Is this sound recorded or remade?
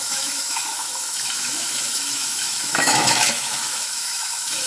remade